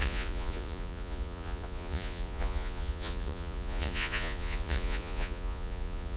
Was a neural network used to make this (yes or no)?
yes